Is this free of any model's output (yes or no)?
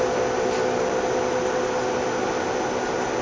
yes